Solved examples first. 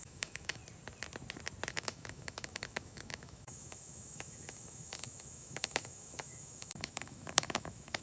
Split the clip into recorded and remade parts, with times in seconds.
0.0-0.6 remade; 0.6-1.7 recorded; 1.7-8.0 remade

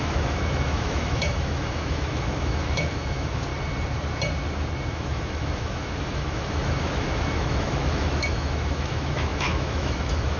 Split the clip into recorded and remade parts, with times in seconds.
0.0-3.5 remade; 3.5-4.9 recorded; 4.9-10.4 remade

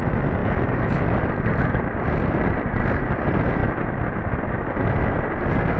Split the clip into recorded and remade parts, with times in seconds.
0.0-5.8 recorded

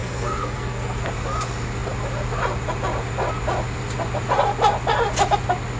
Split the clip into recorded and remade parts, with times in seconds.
0.0-1.0 remade; 1.0-5.8 recorded

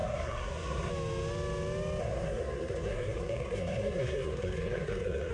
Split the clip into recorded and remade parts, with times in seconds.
0.0-0.9 remade; 0.9-2.0 recorded; 2.0-5.3 remade

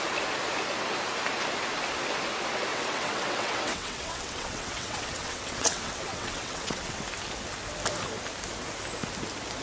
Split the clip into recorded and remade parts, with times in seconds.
0.0-2.7 recorded; 2.7-7.0 remade; 7.0-9.6 recorded